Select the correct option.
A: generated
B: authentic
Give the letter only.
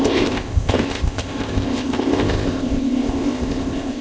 A